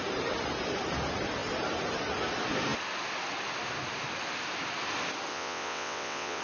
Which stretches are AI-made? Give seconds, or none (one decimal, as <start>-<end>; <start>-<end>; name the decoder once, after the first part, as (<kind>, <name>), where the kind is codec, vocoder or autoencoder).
5.3-6.4 (vocoder, WaveNeXt)